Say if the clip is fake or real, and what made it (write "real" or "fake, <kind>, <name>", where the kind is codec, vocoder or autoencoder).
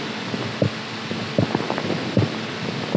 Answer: real